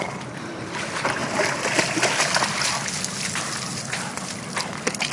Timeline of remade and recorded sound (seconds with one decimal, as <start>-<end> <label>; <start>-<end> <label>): 0.0-5.1 recorded